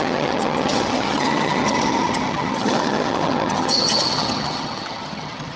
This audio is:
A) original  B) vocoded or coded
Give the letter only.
B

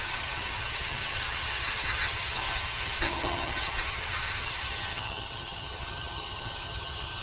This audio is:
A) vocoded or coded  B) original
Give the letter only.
A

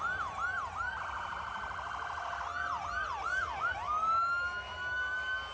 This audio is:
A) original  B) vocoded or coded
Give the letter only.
A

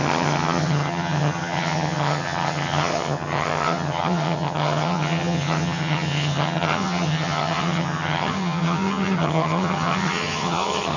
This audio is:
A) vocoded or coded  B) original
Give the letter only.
A